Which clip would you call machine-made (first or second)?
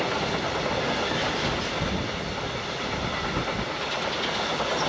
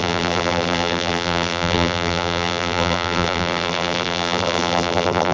second